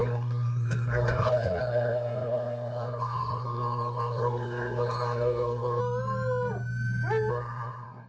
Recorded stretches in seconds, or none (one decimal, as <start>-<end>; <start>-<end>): 5.8-7.3